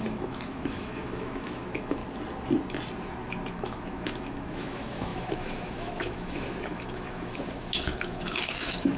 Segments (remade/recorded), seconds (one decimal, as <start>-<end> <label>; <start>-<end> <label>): 0.0-2.0 remade; 2.0-3.5 recorded; 3.5-9.0 remade